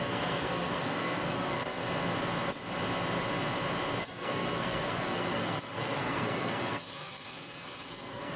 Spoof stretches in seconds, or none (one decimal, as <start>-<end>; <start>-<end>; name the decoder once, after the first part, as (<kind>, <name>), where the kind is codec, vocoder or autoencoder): 0.0-1.8 (codec, SNAC); 4.0-8.4